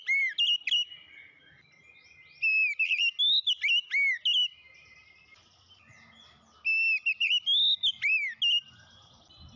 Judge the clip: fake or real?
real